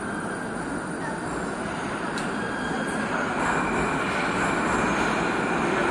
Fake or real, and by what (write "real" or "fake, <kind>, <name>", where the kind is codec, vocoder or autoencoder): real